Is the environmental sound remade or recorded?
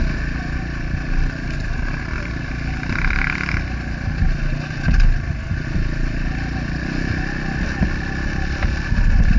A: recorded